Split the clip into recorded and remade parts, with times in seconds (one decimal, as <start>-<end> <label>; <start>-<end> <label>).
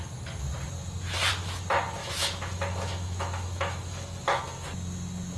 0.0-2.0 recorded; 2.0-4.4 remade; 4.4-5.4 recorded